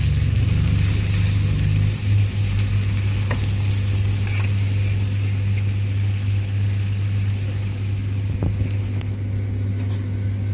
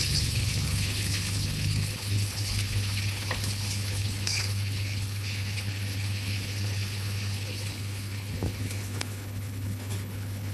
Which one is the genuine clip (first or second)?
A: first